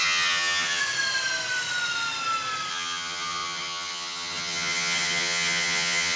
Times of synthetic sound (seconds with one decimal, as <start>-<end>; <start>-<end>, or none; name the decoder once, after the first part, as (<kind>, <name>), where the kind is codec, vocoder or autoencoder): 0.0-0.8 (vocoder, HiFi-GAN); 2.7-6.2